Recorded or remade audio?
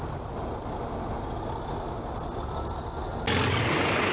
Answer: recorded